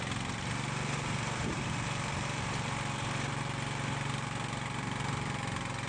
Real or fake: real